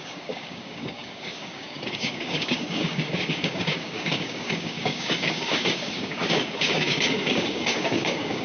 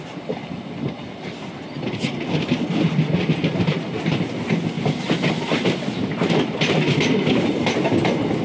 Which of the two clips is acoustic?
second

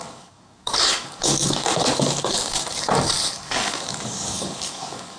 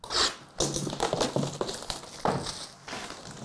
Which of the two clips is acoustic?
second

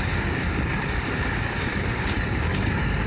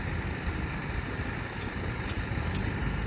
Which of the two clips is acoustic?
second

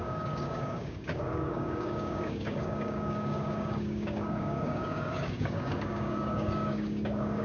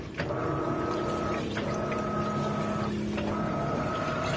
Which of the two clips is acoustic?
second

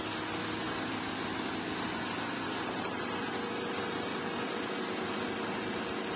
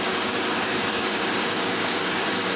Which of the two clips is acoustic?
first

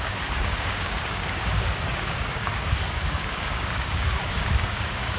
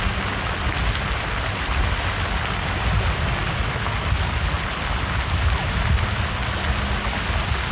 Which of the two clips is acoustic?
second